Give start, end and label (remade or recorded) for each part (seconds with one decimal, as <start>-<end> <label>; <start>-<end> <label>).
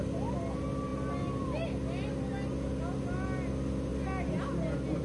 0.0-5.0 recorded